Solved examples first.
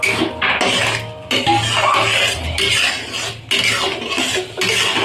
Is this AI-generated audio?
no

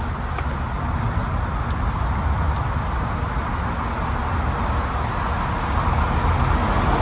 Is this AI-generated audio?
no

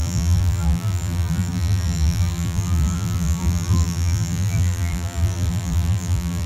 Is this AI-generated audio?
yes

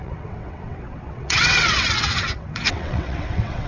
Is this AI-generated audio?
yes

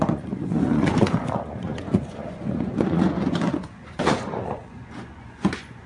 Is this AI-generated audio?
yes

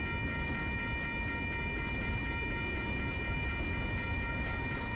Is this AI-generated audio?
no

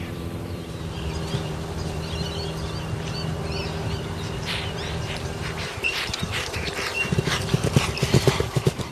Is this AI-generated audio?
yes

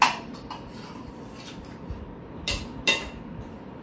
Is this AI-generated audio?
yes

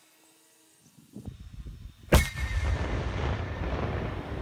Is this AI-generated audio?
no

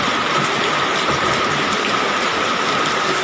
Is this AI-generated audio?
yes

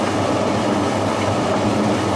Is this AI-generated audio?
no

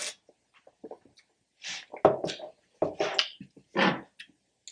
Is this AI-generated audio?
no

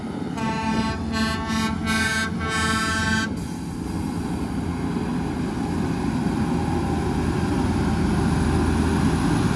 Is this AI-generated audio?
no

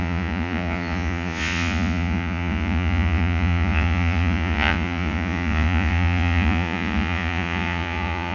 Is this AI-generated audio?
yes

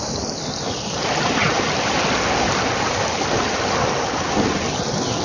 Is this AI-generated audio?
no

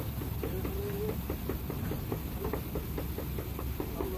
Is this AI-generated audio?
no